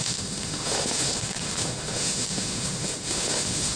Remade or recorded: remade